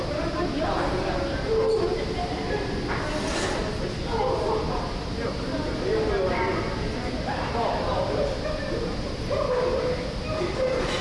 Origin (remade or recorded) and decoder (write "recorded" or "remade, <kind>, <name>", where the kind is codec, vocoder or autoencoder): recorded